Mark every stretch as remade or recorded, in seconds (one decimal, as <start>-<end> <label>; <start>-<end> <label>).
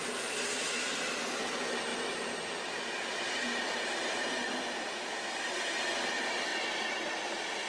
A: 0.0-7.7 recorded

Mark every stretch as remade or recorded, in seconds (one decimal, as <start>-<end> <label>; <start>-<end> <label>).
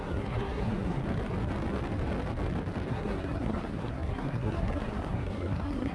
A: 0.0-1.0 remade; 1.0-2.9 recorded; 2.9-5.9 remade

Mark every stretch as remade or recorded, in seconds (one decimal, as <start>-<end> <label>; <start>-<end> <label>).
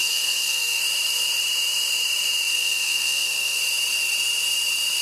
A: 0.0-0.8 remade; 0.8-2.5 recorded; 2.5-3.6 remade; 3.6-5.0 recorded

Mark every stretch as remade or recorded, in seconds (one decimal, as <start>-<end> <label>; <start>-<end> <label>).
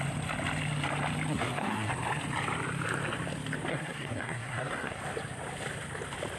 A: 0.0-1.3 recorded; 1.3-1.9 remade; 1.9-3.7 recorded; 3.7-5.0 remade; 5.0-6.4 recorded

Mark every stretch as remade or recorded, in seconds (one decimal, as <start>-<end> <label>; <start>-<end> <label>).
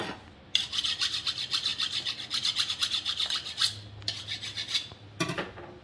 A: 0.0-5.8 recorded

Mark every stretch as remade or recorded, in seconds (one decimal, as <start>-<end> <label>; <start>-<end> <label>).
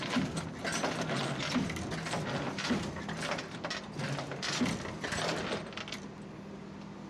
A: 0.0-7.1 recorded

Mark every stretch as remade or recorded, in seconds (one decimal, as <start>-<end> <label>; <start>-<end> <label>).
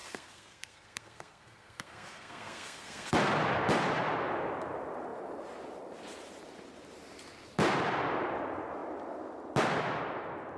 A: 0.0-3.1 remade; 3.1-10.6 recorded